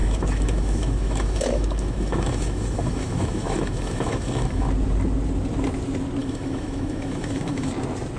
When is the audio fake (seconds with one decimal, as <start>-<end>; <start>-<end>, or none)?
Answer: 0.0-4.7; 6.2-7.7